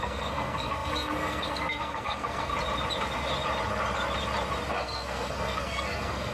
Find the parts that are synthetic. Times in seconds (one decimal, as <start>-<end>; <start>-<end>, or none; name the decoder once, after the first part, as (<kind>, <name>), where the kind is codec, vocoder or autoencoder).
0.0-2.5 (codec, SNAC); 4.7-6.3